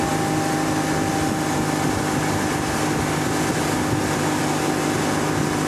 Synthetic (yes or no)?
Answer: no